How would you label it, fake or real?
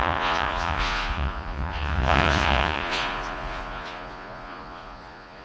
fake